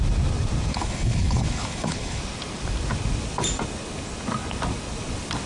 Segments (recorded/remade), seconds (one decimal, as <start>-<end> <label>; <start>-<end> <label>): 0.0-0.7 recorded; 0.7-2.2 remade; 2.2-5.5 recorded